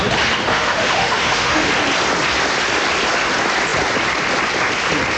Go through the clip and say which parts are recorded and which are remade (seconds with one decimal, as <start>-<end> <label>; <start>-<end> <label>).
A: 0.0-0.5 recorded; 0.5-1.7 remade; 1.7-5.2 recorded